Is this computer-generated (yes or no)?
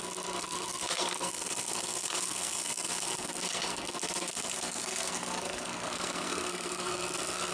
yes